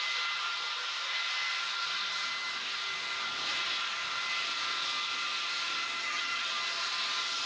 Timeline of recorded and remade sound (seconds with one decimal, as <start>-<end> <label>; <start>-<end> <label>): 0.0-6.0 recorded; 6.0-6.5 remade; 6.5-7.5 recorded

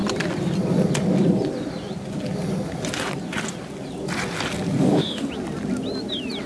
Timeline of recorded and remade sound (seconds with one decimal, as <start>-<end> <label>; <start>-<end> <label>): 0.0-4.8 recorded; 4.8-5.3 remade; 5.3-6.5 recorded